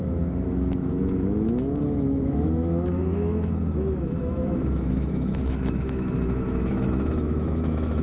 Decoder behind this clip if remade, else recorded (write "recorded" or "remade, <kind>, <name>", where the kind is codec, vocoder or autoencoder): remade, autoencoder, DAC-VAE